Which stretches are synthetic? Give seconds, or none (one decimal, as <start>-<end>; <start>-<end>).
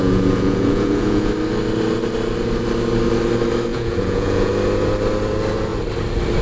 0.0-1.3; 3.7-4.5